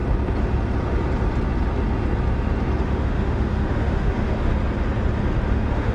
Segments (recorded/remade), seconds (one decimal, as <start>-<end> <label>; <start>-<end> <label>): 0.0-2.8 recorded; 2.8-4.5 remade; 4.5-5.5 recorded; 5.5-5.9 remade